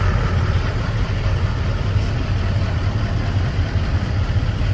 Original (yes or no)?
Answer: no